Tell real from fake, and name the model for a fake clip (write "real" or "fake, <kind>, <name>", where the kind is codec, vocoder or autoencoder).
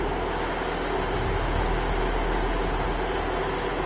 real